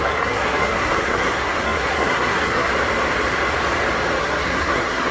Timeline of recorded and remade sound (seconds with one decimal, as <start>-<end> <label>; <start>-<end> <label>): 0.0-2.7 remade; 2.7-4.2 recorded; 4.2-5.1 remade